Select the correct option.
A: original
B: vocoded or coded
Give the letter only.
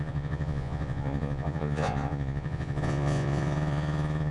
B